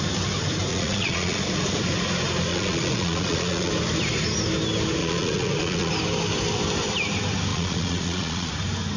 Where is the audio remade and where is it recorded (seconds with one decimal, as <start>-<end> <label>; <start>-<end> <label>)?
0.0-0.7 recorded; 0.7-1.4 remade; 1.4-2.5 recorded; 2.5-3.7 remade; 3.7-5.0 recorded; 5.0-5.9 remade; 5.9-7.5 recorded; 7.5-8.5 remade; 8.5-9.0 recorded